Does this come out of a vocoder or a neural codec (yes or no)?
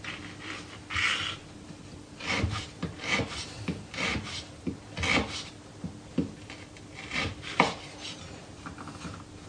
no